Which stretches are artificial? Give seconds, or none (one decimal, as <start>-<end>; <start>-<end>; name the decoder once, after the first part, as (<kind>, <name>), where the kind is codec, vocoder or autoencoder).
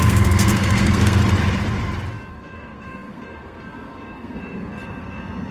0.0-1.2 (codec, SNAC); 2.3-5.5